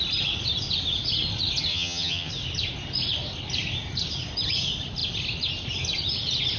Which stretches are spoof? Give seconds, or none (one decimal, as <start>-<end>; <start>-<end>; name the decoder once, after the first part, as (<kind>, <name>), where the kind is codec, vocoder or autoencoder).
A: 1.7-2.3 (vocoder, HiFi-GAN)

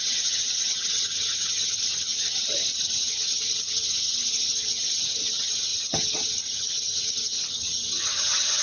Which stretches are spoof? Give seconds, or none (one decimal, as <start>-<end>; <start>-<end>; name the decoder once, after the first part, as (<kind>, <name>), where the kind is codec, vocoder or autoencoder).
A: 0.0-8.6 (vocoder, HiFi-GAN)

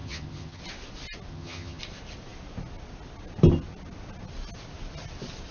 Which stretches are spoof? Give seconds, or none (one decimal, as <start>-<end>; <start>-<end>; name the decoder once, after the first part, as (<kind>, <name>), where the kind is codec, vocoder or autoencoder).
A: 0.0-0.6 (vocoder, HiFi-GAN); 1.3-1.8

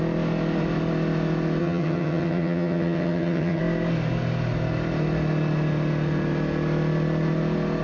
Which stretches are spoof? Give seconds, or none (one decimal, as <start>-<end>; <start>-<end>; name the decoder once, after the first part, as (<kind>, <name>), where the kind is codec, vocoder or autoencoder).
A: 1.6-3.6 (vocoder, HiFi-GAN)

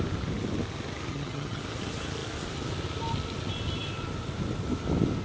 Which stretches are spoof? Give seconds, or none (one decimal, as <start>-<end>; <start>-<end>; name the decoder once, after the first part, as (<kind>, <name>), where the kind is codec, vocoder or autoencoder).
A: 1.1-1.6 (vocoder, HiFi-GAN)

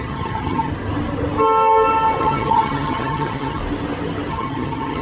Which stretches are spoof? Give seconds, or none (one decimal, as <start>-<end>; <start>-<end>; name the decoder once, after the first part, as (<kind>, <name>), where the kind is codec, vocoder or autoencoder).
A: 0.0-0.7 (vocoder, HiFi-GAN); 2.2-3.6; 4.3-5.0

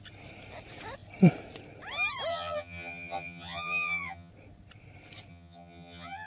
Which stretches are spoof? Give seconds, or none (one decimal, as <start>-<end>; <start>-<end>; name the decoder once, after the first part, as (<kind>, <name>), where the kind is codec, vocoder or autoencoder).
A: 2.3-4.3 (vocoder, HiFi-GAN); 5.3-6.3